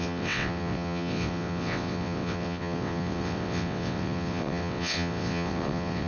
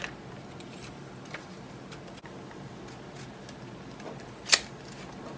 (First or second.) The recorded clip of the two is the second